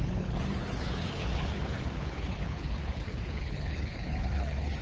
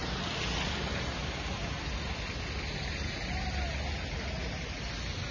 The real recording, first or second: second